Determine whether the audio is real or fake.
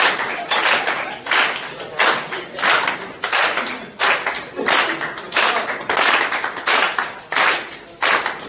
real